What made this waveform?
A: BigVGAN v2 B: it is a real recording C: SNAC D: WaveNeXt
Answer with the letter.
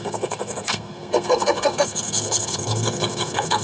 C